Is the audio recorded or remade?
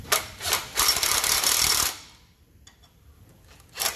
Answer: remade